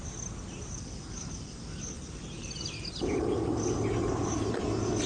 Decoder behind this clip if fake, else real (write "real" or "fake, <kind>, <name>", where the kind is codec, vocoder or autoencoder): real